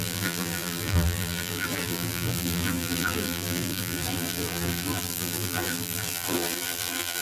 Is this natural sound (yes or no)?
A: no